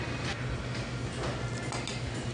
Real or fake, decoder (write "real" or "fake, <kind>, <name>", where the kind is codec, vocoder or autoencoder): real